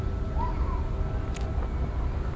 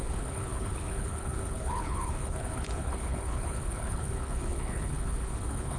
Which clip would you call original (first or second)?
first